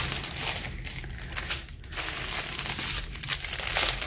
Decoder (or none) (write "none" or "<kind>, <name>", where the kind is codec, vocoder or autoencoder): none